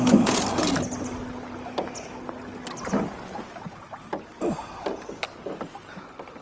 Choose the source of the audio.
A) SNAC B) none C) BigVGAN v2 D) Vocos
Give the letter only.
B